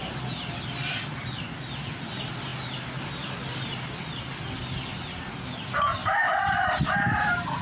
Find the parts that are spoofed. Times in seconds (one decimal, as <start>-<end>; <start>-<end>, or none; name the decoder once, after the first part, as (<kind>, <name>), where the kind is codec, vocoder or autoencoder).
none